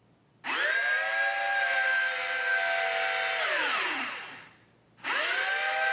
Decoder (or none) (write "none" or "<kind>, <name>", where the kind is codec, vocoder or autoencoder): none